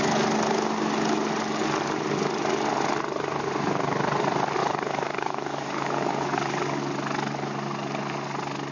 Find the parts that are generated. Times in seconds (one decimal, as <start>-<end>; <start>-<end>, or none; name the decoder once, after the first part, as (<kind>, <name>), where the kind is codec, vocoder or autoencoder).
4.6-6.8 (codec, DAC)